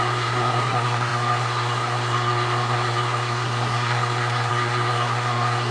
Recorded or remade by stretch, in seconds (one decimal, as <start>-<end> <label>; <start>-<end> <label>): 0.0-5.7 remade